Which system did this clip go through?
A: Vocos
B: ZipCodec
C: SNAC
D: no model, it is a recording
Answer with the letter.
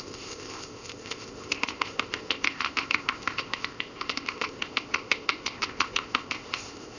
B